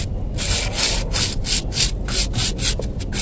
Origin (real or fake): real